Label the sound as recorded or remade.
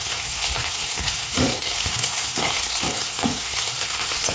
remade